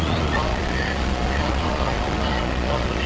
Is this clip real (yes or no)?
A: no